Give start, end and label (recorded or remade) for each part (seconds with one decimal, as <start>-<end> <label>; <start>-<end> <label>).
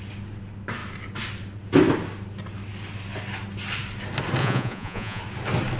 0.0-4.4 recorded; 4.4-5.2 remade; 5.2-5.8 recorded